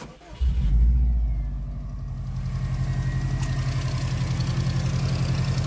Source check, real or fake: real